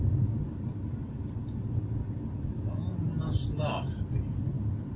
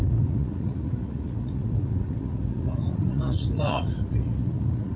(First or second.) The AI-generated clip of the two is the second